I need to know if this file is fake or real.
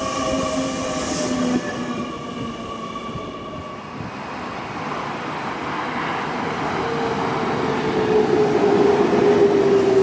real